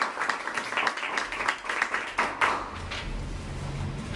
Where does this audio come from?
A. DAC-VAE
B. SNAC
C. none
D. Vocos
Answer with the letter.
C